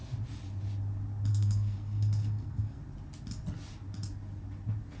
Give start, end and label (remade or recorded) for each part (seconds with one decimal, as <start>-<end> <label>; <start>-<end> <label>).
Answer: 0.0-1.3 recorded; 1.3-2.8 remade; 2.8-5.0 recorded